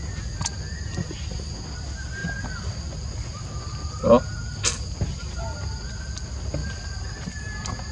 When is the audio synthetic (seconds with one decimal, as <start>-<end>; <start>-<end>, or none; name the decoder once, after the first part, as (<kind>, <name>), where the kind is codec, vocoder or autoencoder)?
6.6-7.4 (vocoder, BigVGAN v2)